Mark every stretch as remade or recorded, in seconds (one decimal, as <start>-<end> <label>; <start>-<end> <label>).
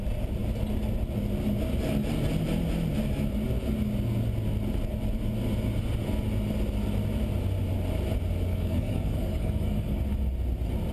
0.0-8.5 recorded; 8.5-10.0 remade; 10.0-10.9 recorded